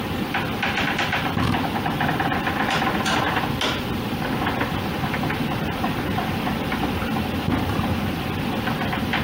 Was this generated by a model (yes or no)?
no